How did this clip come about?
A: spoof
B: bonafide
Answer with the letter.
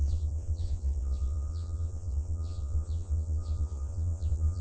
A